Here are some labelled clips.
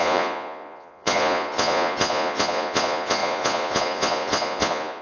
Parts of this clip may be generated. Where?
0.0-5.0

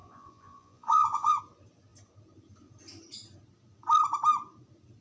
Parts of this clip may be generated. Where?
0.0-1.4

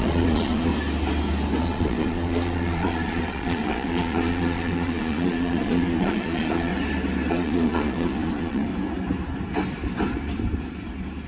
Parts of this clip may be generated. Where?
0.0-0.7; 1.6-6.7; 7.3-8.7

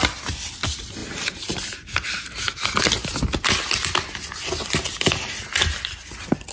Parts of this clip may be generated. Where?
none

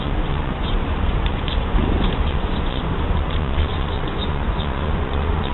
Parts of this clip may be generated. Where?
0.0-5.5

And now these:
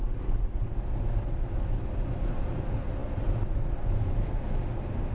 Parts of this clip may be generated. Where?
none

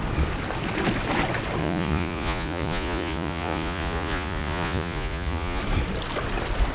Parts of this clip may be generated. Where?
1.6-5.6

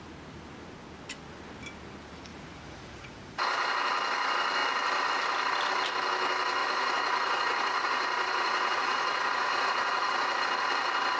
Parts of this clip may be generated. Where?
2.3-3.4; 6.6-10.4